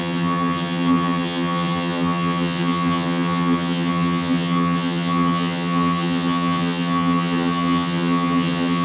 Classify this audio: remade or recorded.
remade